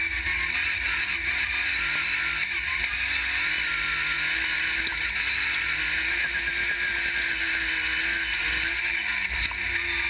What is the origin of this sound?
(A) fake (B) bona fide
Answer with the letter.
B